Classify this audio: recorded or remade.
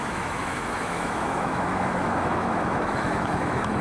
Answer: remade